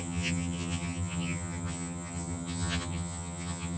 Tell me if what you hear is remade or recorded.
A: remade